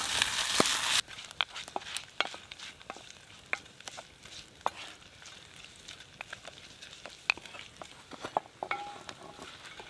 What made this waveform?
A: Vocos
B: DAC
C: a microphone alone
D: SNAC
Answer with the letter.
C